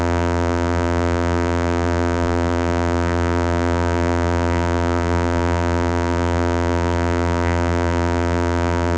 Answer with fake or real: fake